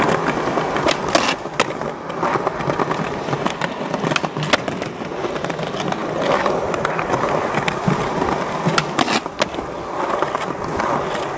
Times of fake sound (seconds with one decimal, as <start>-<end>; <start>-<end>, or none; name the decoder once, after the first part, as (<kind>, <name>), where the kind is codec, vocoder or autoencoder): none